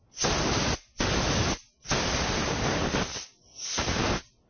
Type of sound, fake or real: real